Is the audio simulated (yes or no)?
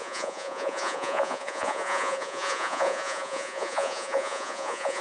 yes